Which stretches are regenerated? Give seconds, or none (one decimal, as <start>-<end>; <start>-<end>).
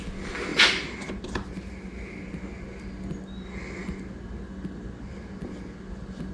none